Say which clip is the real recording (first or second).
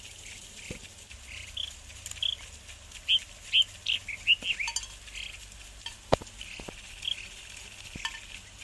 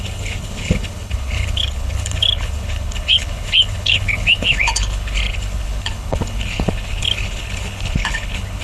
first